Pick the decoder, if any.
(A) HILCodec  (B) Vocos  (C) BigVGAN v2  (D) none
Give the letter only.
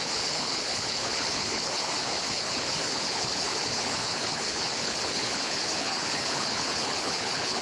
A